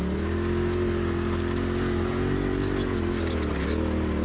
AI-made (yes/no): no